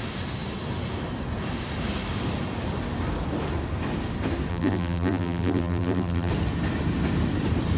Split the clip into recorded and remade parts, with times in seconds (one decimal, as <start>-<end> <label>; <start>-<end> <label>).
0.0-4.5 recorded; 4.5-6.3 remade; 6.3-7.8 recorded